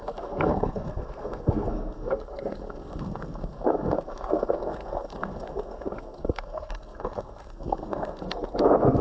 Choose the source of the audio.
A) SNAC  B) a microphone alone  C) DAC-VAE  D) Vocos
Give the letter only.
A